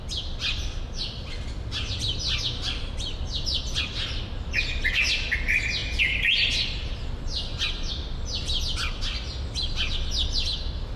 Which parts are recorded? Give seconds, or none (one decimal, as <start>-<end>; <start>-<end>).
0.0-11.0